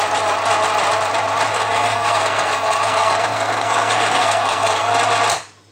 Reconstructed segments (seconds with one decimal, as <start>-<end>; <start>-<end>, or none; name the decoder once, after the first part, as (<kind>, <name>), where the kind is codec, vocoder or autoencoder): 1.5-4.9 (codec, SNAC)